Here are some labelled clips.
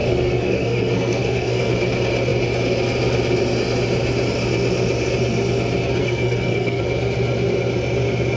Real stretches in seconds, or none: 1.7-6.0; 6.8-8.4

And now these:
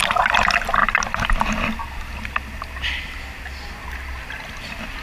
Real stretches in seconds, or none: 0.0-5.0

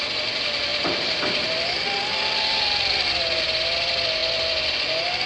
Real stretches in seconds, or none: 0.0-5.3

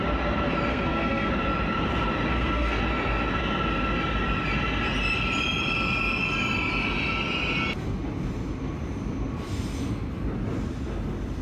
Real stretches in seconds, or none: 0.0-0.7; 1.3-2.3; 2.8-11.4

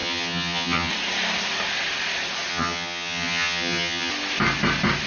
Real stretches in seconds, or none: 0.9-2.5; 4.1-5.1

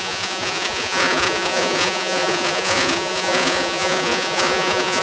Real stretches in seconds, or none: none